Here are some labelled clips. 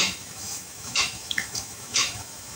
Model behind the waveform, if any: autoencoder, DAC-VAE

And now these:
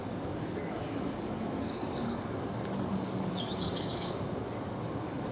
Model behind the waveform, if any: codec, DAC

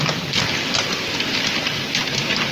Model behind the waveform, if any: none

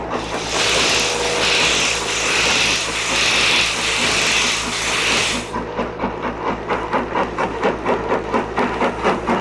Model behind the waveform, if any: none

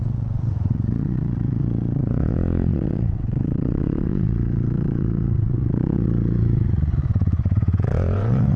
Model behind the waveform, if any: vocoder, WaveNeXt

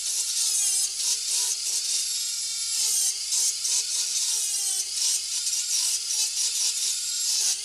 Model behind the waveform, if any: none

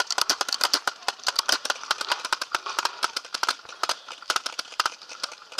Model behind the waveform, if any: vocoder, BigVGAN v2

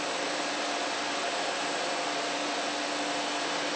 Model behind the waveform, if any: none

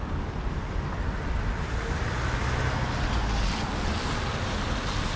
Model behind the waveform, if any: none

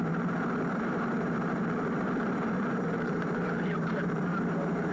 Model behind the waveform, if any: vocoder, BigVGAN v2